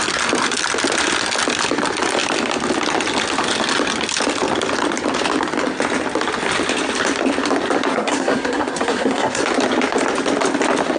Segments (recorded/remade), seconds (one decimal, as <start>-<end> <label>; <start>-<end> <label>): 0.0-7.9 recorded; 7.9-9.4 remade; 9.4-11.0 recorded